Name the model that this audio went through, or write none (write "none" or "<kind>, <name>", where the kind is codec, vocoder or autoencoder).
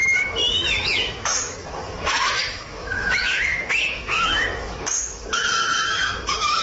autoencoder, DAC-VAE